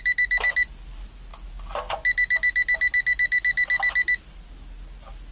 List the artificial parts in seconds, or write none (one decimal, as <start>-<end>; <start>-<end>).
none